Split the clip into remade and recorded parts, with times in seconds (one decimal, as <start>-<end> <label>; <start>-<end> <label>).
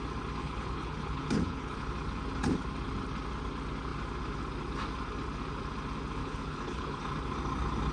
0.0-0.4 recorded; 0.4-1.9 remade; 1.9-6.2 recorded; 6.2-7.0 remade; 7.0-7.9 recorded